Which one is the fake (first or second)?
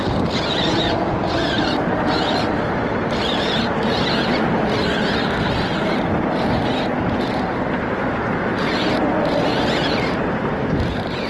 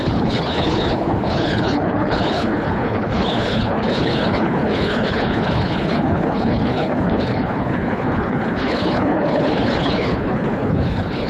second